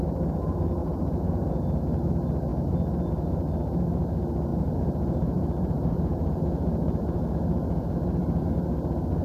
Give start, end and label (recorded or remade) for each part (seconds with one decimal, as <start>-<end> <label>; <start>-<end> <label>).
0.0-0.8 recorded; 0.8-1.8 remade; 1.8-4.5 recorded; 4.5-7.9 remade; 7.9-9.2 recorded